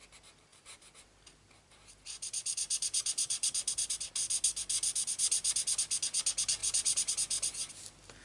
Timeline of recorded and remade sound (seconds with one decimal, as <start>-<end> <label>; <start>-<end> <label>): 0.0-0.5 recorded; 0.5-4.1 remade; 4.1-6.6 recorded; 6.6-7.1 remade; 7.1-8.2 recorded